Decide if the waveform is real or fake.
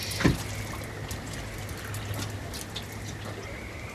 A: real